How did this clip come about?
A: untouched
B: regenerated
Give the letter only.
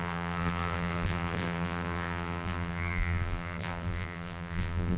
B